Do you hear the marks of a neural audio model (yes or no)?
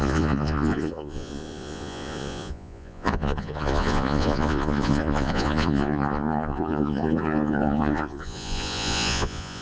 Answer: yes